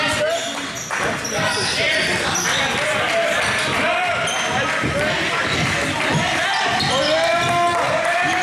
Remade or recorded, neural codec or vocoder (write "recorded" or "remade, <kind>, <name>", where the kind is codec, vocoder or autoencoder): recorded